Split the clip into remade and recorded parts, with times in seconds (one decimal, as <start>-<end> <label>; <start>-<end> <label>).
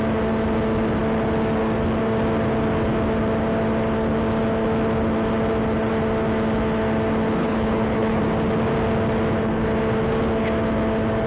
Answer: 0.0-7.4 recorded; 7.4-8.2 remade; 8.2-11.3 recorded